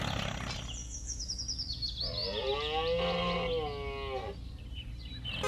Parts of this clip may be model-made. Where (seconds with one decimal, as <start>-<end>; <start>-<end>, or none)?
0.8-1.7